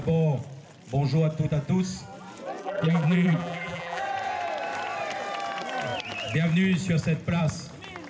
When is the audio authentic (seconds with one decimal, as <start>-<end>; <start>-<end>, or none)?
0.0-2.6; 4.0-8.1